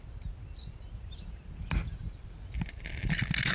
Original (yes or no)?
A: yes